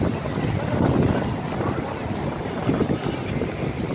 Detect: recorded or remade recorded